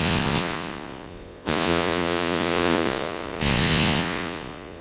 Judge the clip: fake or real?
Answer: fake